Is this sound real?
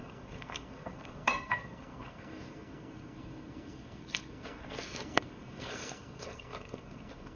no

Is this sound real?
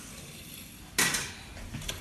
yes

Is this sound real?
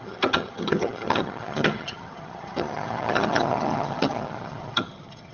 no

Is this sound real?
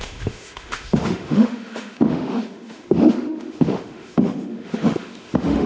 no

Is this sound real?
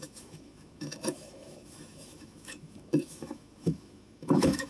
no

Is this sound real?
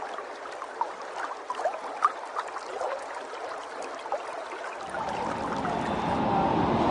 yes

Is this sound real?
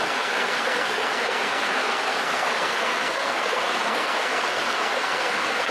no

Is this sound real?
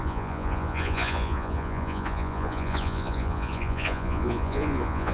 no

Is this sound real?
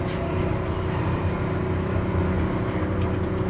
yes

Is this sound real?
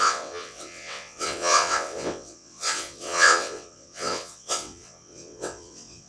no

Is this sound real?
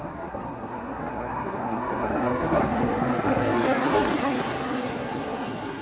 no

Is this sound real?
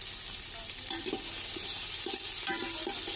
yes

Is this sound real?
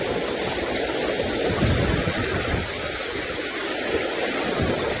yes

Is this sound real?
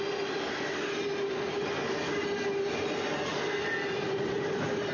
yes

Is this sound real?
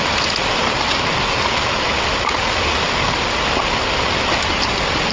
yes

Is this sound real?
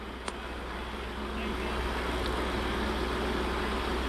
yes